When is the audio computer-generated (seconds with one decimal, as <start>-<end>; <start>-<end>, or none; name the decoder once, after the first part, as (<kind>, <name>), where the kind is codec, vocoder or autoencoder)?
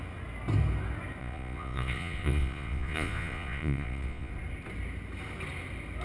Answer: 1.2-4.3 (vocoder, Vocos)